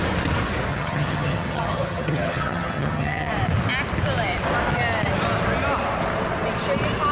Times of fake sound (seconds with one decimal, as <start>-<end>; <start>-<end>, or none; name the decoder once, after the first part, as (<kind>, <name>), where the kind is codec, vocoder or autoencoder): 0.7-3.3 (vocoder, HiFi-GAN)